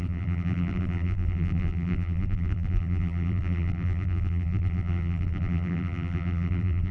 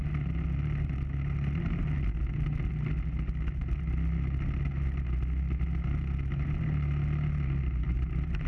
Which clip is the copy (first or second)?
first